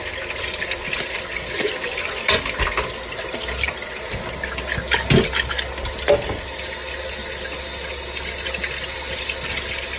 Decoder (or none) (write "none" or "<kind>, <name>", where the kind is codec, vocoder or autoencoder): none